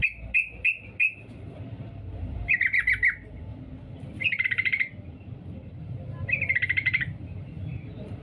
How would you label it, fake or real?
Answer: fake